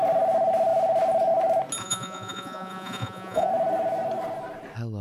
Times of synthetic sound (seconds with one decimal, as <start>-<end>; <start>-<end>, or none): 1.8-3.5